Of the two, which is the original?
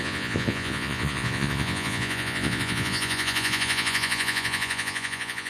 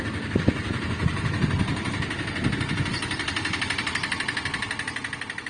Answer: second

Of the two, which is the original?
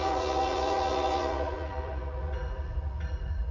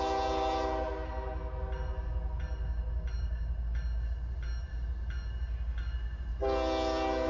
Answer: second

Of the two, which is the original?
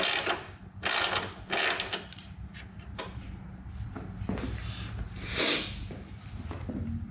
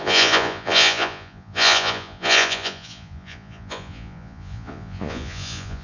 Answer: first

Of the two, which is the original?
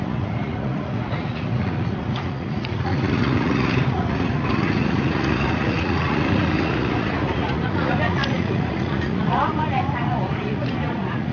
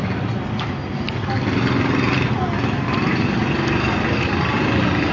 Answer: second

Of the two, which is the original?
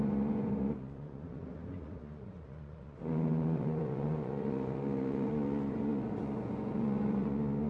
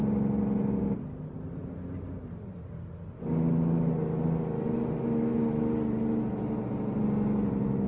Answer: second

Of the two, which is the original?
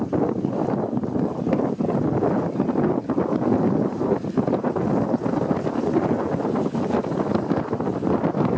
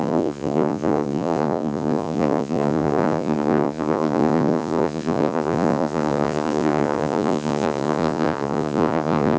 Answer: first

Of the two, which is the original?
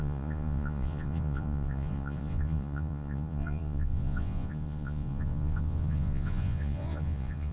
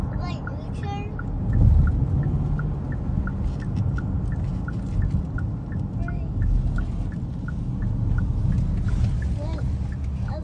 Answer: second